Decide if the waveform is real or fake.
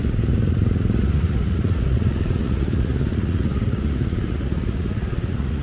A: fake